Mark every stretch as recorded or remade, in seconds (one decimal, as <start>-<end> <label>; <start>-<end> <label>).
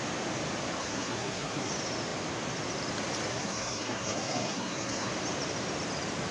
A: 0.0-0.8 recorded; 0.8-1.7 remade; 1.7-3.3 recorded; 3.3-5.1 remade; 5.1-6.3 recorded